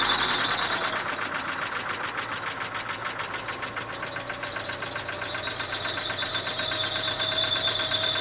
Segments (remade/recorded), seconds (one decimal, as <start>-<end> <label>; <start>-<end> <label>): 0.0-8.2 recorded